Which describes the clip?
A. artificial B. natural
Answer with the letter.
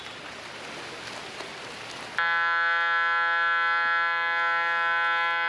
B